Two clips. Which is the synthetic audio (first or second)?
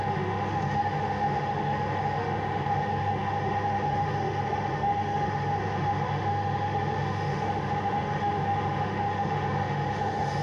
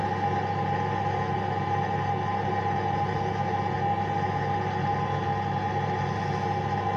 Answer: first